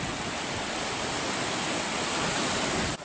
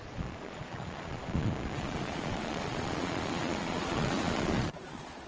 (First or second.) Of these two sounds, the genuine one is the first